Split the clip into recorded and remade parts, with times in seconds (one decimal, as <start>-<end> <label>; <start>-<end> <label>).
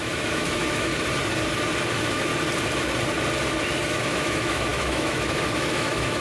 0.0-0.9 remade; 0.9-1.9 recorded; 1.9-2.3 remade; 2.3-3.9 recorded; 3.9-6.2 remade